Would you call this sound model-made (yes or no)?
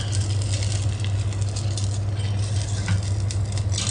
no